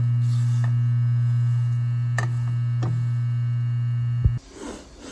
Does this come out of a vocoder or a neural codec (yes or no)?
no